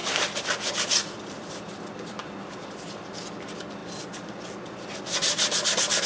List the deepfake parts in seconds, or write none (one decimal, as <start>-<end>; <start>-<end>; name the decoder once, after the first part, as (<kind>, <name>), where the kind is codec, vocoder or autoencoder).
0.0-3.2 (vocoder, BigVGAN v2)